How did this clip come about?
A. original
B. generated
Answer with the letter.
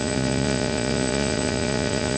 B